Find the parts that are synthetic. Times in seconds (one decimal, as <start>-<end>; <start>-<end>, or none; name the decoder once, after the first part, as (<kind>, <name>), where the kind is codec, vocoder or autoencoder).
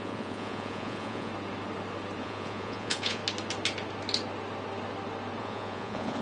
0.0-1.3 (vocoder, Vocos); 2.2-3.2; 5.4-6.2